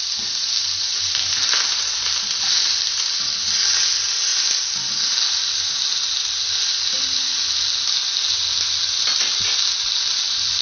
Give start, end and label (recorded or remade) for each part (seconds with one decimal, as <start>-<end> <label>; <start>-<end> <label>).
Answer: 0.0-10.6 recorded